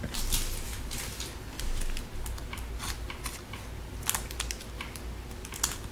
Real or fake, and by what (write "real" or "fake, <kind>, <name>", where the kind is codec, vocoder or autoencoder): real